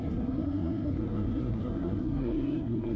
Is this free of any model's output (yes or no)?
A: no